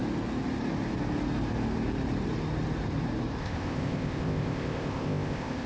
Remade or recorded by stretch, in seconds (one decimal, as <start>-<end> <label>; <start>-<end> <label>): 0.0-3.4 recorded; 3.4-5.7 remade